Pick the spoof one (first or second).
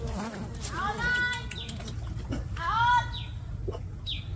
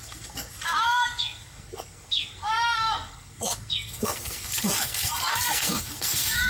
second